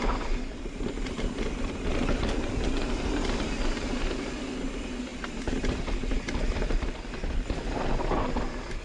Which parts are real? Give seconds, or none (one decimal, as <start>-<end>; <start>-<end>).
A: 0.0-8.8